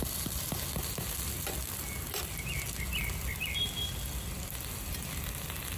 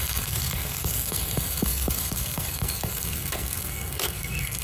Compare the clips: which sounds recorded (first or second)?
first